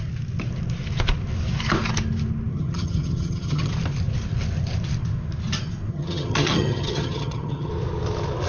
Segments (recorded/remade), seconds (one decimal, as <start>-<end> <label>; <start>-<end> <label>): 0.0-2.5 recorded; 2.5-3.7 remade; 3.7-5.9 recorded; 5.9-7.7 remade; 7.7-8.5 recorded